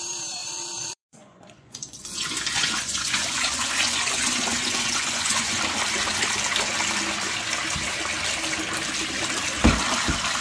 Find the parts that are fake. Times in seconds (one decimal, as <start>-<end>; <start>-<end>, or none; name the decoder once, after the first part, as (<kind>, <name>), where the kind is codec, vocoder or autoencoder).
0.4-5.6 (vocoder, Vocos)